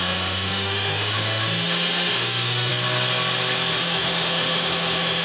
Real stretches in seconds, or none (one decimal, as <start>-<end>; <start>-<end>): 2.7-3.7